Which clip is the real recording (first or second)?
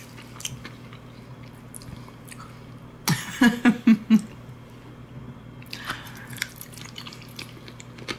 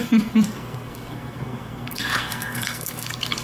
first